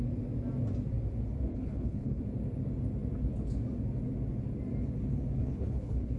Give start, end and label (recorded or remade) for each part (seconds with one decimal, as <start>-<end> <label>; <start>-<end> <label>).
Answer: 0.0-1.5 recorded; 1.5-2.2 remade; 2.2-5.4 recorded; 5.4-6.2 remade